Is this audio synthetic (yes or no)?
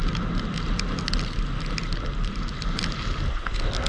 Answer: no